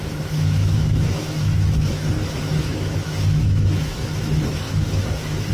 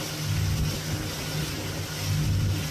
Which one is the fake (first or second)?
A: first